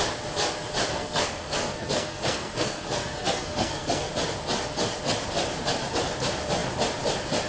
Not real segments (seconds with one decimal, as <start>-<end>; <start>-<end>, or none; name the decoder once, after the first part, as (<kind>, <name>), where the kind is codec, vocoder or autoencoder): 0.9-4.1 (codec, SNAC)